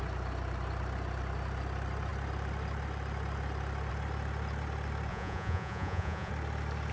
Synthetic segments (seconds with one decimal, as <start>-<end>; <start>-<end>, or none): 5.1-6.3